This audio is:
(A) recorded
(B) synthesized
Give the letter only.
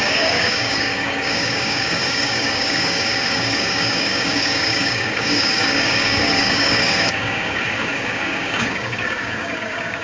B